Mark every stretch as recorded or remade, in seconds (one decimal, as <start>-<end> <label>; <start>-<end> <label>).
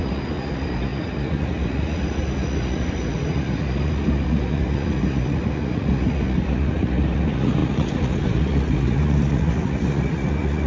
0.0-10.7 remade